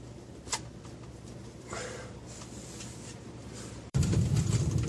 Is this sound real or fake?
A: fake